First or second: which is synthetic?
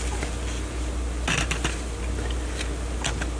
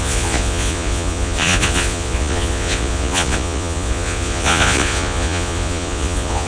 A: second